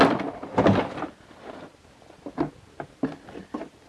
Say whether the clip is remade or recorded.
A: recorded